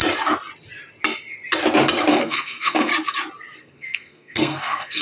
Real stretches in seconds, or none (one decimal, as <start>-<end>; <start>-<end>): 0.0-2.1; 2.9-3.6